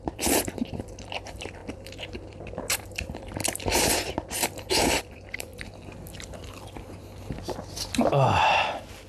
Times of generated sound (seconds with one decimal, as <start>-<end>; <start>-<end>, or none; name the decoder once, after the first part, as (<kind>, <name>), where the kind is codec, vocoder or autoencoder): 0.0-1.6 (vocoder, BigVGAN v2); 2.3-5.5